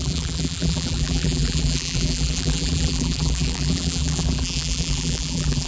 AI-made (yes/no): yes